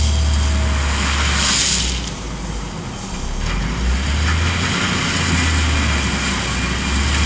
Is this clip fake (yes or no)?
no